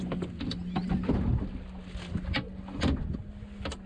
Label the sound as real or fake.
real